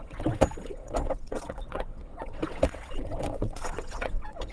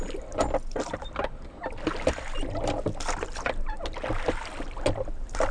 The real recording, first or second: second